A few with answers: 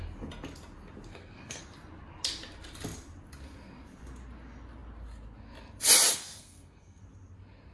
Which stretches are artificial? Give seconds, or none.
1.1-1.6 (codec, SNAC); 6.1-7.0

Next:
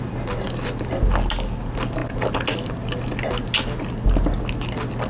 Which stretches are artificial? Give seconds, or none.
none

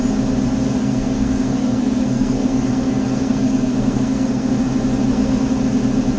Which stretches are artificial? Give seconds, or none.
0.8-4.5 (codec, SNAC); 5.0-5.5